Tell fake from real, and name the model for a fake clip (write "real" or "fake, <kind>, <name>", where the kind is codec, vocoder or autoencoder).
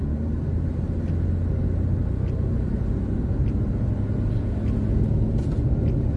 real